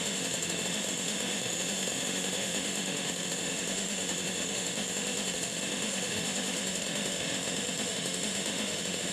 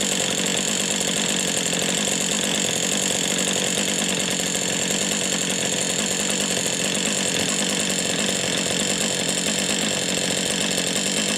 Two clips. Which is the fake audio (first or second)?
first